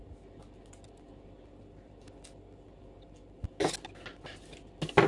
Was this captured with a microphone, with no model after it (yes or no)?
yes